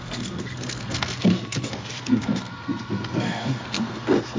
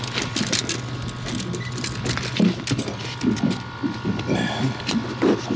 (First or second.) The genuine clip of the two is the second